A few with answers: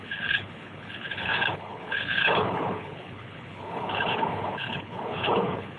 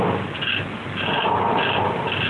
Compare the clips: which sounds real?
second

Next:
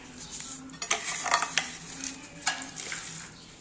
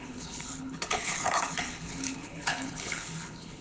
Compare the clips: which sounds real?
first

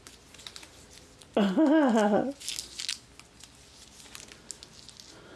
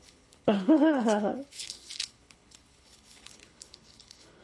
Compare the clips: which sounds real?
first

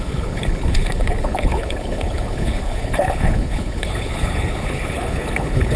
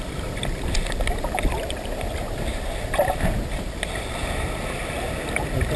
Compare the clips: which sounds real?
second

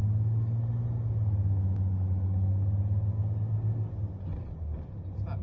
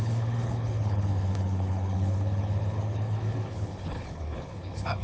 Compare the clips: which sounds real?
first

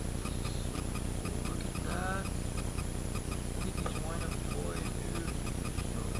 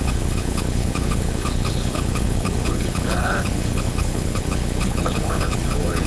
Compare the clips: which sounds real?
first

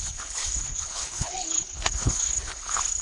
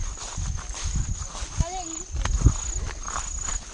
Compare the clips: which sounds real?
second